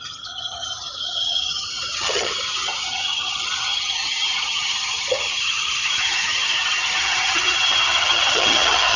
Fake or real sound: fake